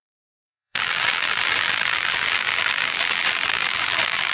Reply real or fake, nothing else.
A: fake